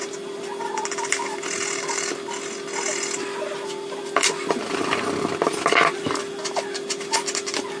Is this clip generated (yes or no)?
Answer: no